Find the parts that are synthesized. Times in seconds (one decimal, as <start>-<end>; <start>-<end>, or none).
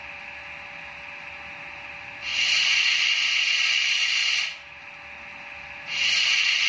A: none